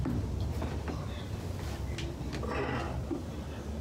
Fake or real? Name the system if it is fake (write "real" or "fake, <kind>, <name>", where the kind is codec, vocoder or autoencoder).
real